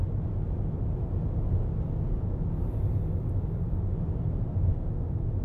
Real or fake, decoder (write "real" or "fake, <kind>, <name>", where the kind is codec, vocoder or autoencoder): real